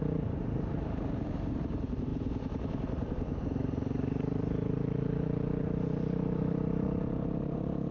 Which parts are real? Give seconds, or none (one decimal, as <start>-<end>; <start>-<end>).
none